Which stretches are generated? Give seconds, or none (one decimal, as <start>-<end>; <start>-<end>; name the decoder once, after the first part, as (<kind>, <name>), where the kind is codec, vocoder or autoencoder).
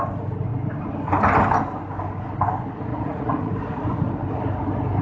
2.9-3.5 (vocoder, Vocos)